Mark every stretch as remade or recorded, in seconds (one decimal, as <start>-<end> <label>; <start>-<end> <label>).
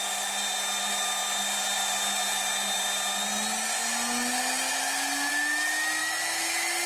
0.0-6.0 recorded; 6.0-6.9 remade